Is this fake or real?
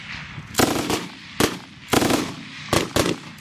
real